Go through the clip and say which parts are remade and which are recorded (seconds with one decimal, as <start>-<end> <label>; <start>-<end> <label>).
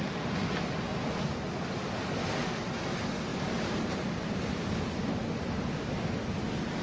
0.0-3.3 recorded; 3.3-4.9 remade; 4.9-6.8 recorded